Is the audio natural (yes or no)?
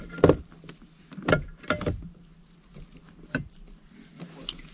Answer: yes